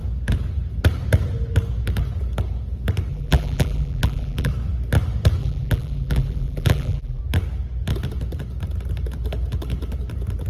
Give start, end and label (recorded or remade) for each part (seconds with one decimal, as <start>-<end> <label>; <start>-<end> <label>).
0.0-3.1 recorded; 3.1-4.5 remade; 4.5-5.4 recorded; 5.4-7.2 remade; 7.2-10.5 recorded